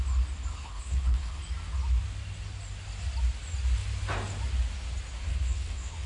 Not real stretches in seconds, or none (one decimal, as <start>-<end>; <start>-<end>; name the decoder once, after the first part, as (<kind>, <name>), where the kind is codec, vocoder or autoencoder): 0.5-1.4 (codec, HILCodec); 5.2-6.1